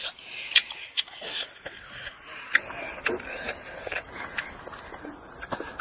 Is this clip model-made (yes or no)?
no